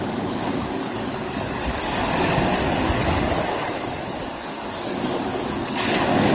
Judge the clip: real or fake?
fake